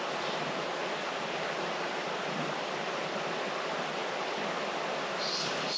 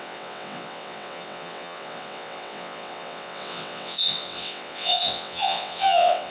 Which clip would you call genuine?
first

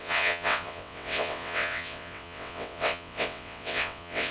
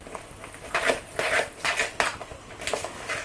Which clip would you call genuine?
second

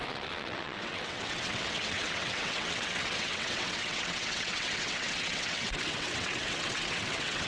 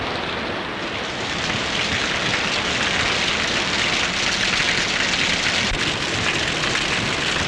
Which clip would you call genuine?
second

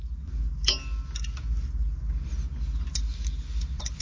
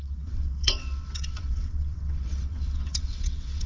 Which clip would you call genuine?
first